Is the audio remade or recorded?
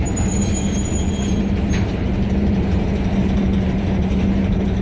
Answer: remade